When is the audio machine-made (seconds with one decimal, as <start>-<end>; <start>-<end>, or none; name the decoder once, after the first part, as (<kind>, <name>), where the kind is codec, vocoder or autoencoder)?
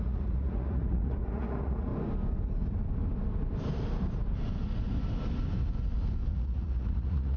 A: 0.0-1.9 (vocoder, Vocos); 6.3-7.4